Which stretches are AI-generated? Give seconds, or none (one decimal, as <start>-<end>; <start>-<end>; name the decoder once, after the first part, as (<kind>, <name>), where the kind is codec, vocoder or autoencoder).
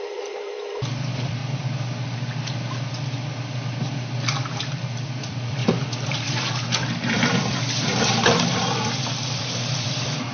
0.0-1.4 (vocoder, BigVGAN v2); 4.6-10.3